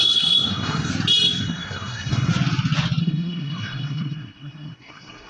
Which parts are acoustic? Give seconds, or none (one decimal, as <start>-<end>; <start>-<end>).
0.9-1.4; 2.3-3.0